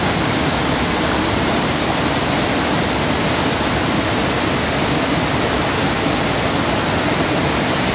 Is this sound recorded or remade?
recorded